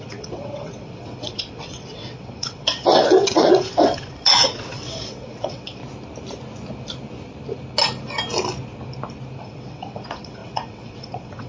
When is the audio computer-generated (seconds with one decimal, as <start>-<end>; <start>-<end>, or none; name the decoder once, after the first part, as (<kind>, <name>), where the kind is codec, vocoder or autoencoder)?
0.0-5.8 (vocoder, WaveNeXt); 9.4-11.5